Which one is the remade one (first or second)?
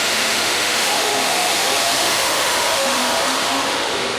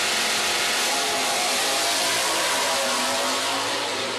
first